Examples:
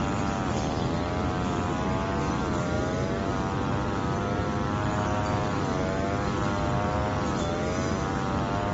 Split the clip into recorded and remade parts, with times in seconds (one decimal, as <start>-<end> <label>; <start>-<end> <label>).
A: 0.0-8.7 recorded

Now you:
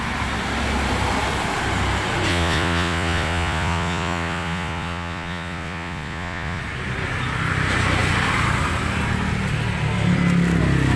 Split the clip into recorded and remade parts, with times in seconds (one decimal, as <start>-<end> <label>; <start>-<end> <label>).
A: 0.0-2.3 recorded; 2.3-6.6 remade; 6.6-11.0 recorded

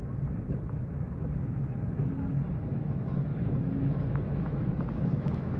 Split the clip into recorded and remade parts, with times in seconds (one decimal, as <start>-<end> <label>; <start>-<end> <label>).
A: 0.0-0.9 recorded; 0.9-1.6 remade; 1.6-2.7 recorded; 2.7-5.6 remade

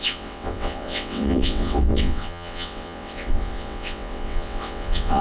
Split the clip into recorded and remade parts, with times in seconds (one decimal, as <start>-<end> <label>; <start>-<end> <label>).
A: 0.0-5.2 remade

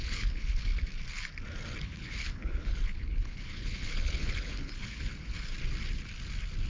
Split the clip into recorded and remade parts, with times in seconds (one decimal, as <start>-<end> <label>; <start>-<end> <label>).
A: 0.0-0.7 remade; 0.7-1.8 recorded; 1.8-5.5 remade; 5.5-6.7 recorded